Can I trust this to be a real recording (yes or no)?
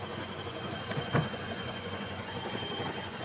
no